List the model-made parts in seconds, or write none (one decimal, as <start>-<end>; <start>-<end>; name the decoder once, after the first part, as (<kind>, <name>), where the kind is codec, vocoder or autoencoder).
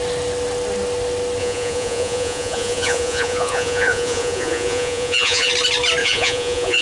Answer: 1.4-5.5 (vocoder, Vocos); 6.0-6.8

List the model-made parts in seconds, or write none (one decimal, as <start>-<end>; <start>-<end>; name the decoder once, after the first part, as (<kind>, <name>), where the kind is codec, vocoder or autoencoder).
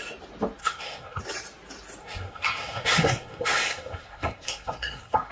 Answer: 0.6-1.2 (codec, SNAC); 2.0-5.3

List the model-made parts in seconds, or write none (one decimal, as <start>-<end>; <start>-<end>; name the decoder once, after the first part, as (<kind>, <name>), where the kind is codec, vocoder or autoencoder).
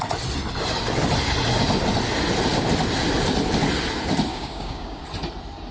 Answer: 4.3-5.0 (codec, DAC)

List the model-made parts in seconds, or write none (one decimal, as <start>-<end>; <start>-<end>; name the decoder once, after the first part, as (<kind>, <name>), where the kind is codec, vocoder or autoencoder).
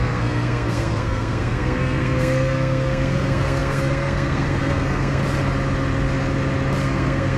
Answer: 0.0-5.2 (codec, SNAC); 6.8-7.4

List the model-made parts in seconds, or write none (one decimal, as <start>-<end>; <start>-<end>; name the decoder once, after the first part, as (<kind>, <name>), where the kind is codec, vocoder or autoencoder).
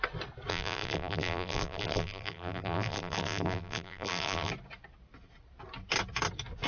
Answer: 0.5-4.5 (vocoder, BigVGAN v2)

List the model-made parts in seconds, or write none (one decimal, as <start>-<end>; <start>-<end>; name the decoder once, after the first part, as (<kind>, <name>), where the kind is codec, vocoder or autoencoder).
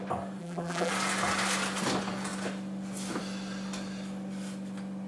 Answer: 0.4-0.9 (vocoder, BigVGAN v2)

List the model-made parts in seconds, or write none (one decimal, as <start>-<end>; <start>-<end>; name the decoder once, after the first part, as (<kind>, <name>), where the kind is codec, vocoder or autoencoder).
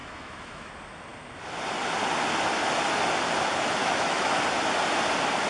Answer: 0.0-0.7 (autoencoder, DAC-VAE); 3.8-4.4